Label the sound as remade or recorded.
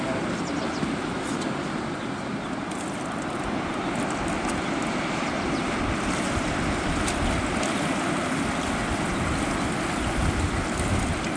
recorded